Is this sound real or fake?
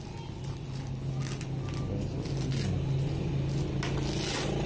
real